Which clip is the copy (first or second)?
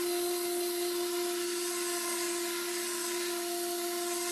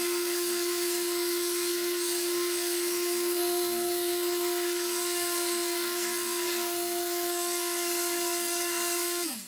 second